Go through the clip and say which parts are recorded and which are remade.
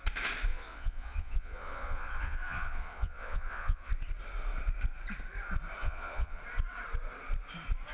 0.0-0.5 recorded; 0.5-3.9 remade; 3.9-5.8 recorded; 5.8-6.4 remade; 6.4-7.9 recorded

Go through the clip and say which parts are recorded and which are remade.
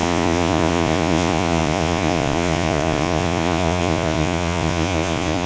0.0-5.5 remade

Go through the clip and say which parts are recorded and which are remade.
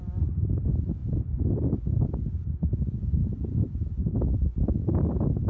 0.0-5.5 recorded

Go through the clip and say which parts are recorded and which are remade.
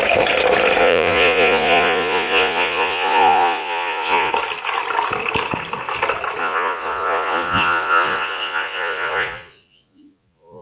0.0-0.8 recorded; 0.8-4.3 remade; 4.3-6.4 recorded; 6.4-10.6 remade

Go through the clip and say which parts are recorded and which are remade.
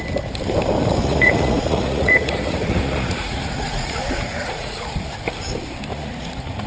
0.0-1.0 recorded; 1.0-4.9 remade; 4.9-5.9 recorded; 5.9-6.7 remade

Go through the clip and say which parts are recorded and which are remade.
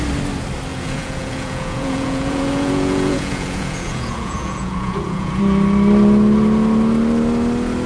0.0-0.7 recorded; 0.7-5.4 remade; 5.4-7.9 recorded